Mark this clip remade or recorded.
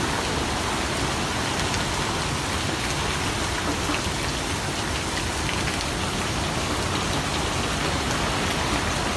recorded